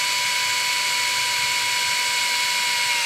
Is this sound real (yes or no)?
yes